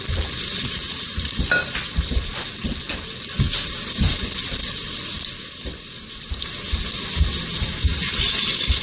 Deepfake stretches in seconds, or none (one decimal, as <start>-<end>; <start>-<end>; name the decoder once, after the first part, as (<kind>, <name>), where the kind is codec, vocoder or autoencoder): 0.5-1.4 (vocoder, Vocos)